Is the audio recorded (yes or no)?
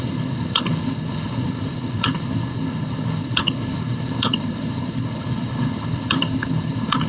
no